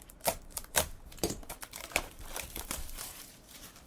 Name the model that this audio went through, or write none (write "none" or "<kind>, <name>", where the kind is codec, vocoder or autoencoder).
vocoder, BigVGAN v2